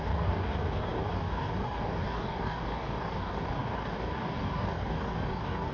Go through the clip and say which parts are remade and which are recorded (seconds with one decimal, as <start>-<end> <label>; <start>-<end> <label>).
0.0-5.7 remade